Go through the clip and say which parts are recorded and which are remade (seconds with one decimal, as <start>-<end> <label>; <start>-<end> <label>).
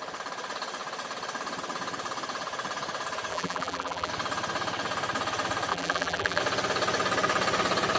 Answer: 0.0-3.3 recorded; 3.3-4.1 remade; 4.1-5.7 recorded; 5.7-6.4 remade; 6.4-8.0 recorded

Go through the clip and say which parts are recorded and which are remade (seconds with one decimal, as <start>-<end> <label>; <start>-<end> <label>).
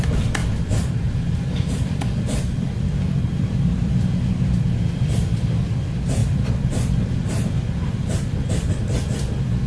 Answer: 0.0-0.4 remade; 0.4-1.3 recorded; 1.3-6.2 remade; 6.2-7.0 recorded; 7.0-9.7 remade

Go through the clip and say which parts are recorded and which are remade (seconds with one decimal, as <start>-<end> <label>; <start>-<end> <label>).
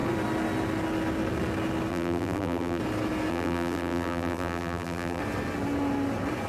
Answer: 0.0-1.9 recorded; 1.9-2.8 remade; 2.8-3.3 recorded; 3.3-5.2 remade; 5.2-6.5 recorded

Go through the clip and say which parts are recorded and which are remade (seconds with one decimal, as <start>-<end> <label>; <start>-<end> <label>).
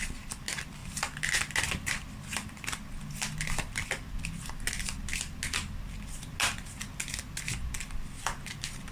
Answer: 0.0-8.9 recorded